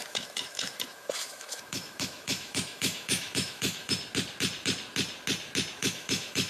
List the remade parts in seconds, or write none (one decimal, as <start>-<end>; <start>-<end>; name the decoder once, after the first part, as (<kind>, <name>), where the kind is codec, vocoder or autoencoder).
0.0-3.9 (autoencoder, DAC-VAE); 5.8-6.5